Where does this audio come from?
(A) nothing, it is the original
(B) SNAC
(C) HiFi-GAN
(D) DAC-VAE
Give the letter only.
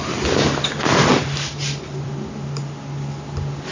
A